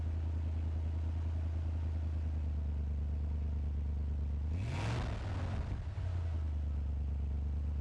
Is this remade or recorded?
recorded